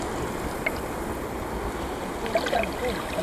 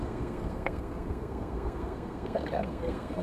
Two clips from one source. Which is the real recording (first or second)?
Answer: first